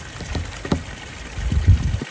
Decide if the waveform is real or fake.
real